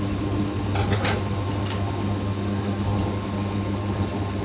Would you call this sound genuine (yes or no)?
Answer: yes